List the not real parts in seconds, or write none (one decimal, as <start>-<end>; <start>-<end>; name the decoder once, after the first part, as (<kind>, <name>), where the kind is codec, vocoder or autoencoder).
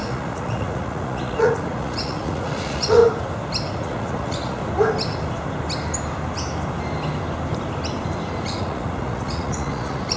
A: 0.0-3.0 (vocoder, Vocos); 3.8-4.6; 8.6-10.2